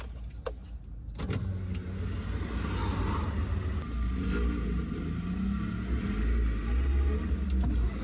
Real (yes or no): yes